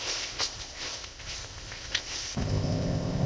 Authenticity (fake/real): fake